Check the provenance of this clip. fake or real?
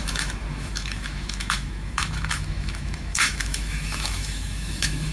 fake